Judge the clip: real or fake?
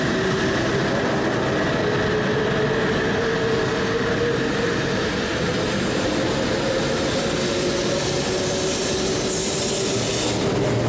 real